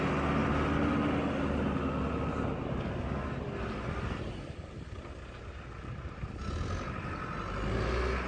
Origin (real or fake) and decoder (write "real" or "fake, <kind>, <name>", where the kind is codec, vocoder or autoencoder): real